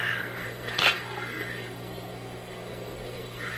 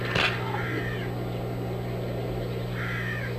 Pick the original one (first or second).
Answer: second